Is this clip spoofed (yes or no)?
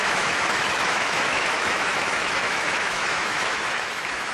yes